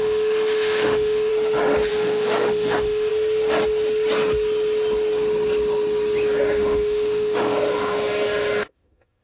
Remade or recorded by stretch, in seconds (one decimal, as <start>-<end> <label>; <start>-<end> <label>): 0.0-1.3 remade; 1.3-1.9 recorded; 1.9-3.1 remade; 3.1-6.4 recorded; 6.4-9.2 remade